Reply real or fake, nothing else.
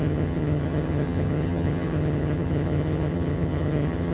fake